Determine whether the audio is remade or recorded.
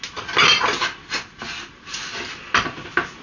recorded